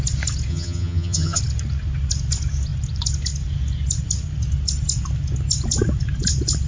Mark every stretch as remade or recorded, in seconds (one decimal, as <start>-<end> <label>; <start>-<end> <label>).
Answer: 0.0-0.5 recorded; 0.5-1.4 remade; 1.4-6.7 recorded